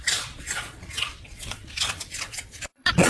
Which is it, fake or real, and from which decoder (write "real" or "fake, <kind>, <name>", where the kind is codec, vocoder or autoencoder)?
fake, vocoder, Vocos